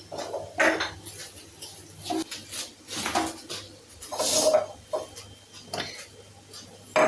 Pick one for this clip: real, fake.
real